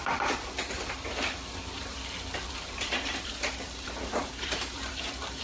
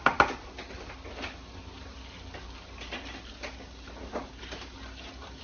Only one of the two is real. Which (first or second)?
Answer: second